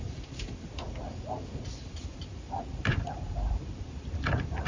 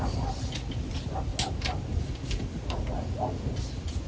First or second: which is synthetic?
first